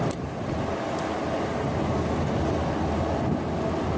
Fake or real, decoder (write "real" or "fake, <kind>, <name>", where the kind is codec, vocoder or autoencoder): real